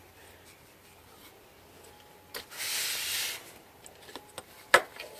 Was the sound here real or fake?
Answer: real